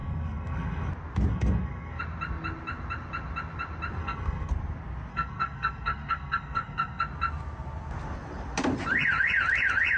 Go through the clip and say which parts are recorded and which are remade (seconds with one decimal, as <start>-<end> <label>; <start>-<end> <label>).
0.0-0.9 remade; 0.9-1.3 recorded; 1.3-2.0 remade; 2.0-4.0 recorded; 4.0-4.5 remade; 4.5-5.1 recorded; 5.1-7.0 remade; 7.0-10.0 recorded